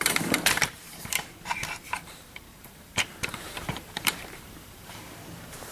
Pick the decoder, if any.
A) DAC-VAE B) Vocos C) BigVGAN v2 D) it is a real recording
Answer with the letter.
C